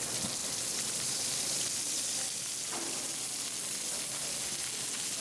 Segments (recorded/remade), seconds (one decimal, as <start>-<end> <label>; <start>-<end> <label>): 0.0-0.4 recorded; 0.4-2.4 remade; 2.4-5.2 recorded